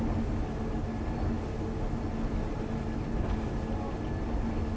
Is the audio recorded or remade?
recorded